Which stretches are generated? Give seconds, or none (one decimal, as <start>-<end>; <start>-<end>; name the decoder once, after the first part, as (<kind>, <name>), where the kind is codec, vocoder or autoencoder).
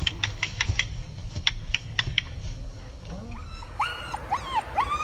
0.0-3.9 (codec, DAC)